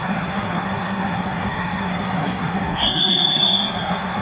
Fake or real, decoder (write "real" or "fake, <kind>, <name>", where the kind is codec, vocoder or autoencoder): fake, codec, SNAC